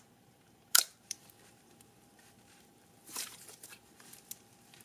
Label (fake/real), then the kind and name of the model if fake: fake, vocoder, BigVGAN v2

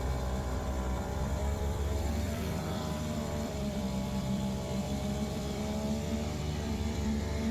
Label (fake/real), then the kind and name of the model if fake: fake, vocoder, BigVGAN v2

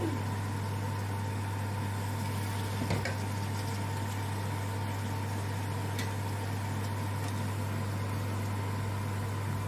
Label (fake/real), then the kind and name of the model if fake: real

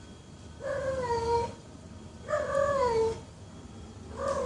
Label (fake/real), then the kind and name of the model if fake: real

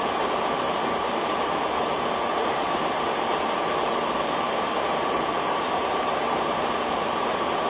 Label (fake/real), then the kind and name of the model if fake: fake, vocoder, BigVGAN v2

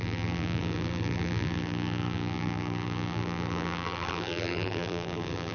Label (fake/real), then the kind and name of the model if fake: fake, vocoder, BigVGAN v2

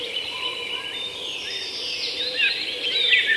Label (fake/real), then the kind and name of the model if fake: fake, vocoder, BigVGAN v2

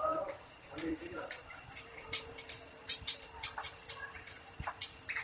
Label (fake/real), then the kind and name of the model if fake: fake, vocoder, BigVGAN v2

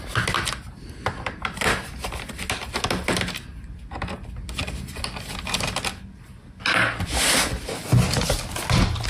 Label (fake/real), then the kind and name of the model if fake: real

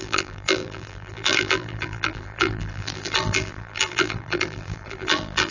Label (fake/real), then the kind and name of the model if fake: fake, vocoder, BigVGAN v2